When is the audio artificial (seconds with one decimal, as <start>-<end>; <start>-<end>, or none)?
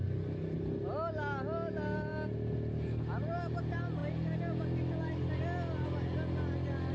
none